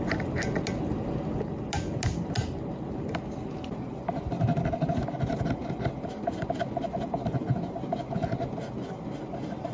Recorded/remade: recorded